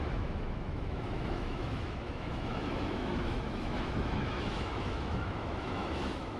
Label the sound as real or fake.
fake